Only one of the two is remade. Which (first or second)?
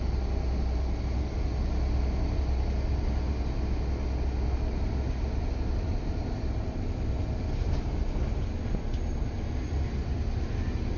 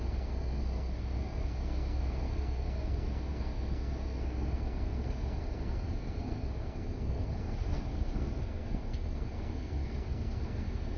second